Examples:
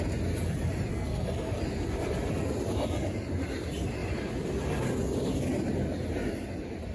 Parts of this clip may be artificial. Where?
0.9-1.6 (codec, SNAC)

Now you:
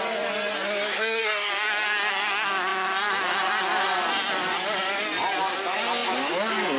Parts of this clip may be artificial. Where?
0.9-1.5 (codec, SNAC)

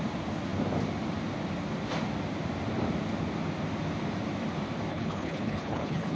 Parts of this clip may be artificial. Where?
4.9-6.2 (codec, HILCodec)